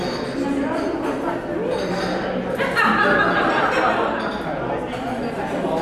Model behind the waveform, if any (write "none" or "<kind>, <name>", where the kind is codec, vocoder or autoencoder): none